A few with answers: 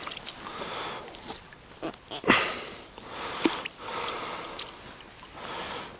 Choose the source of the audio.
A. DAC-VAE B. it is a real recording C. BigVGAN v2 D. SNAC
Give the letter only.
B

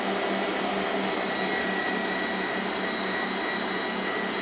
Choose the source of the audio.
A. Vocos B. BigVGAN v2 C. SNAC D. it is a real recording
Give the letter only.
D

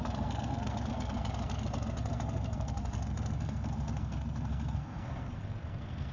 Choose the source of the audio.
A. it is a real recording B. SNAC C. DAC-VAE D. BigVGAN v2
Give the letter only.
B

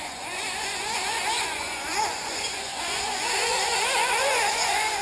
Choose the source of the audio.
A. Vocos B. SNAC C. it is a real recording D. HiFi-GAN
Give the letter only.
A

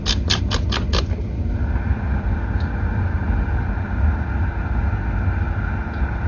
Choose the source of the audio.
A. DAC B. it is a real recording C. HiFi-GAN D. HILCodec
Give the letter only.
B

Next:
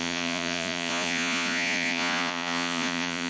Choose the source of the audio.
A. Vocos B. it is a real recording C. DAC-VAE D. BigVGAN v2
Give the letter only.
A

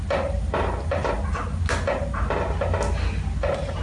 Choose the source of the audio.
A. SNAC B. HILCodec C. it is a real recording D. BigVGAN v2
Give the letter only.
C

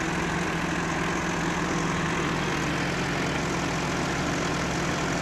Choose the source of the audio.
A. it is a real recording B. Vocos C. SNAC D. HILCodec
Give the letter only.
A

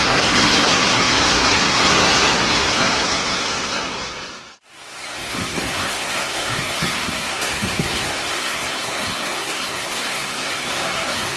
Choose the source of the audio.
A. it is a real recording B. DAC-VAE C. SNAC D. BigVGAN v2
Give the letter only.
C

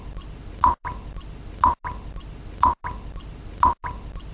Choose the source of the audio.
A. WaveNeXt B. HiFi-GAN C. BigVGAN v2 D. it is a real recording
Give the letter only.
D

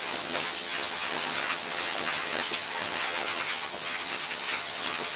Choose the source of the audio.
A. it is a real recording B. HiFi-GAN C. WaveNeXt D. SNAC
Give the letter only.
B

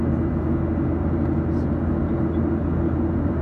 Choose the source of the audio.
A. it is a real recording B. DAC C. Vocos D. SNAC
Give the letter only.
A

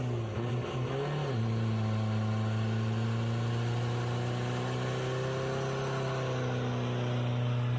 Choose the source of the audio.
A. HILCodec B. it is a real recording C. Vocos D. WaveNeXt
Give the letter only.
B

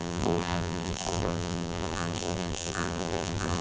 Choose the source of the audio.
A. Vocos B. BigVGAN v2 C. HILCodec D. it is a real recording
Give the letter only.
B